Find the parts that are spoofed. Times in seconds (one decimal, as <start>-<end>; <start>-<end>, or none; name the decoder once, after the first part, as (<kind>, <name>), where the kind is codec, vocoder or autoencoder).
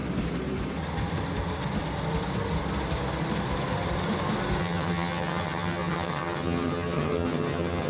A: 4.6-7.9 (vocoder, HiFi-GAN)